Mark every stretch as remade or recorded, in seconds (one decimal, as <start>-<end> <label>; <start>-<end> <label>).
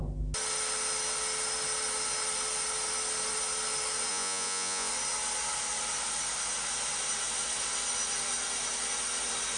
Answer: 0.0-4.1 recorded; 4.1-4.9 remade; 4.9-9.6 recorded